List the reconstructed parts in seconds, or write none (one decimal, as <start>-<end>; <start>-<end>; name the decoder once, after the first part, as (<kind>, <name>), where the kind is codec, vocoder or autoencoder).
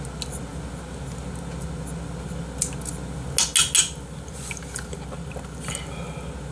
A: none